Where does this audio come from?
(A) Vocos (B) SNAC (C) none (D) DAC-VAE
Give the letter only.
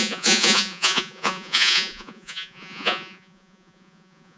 A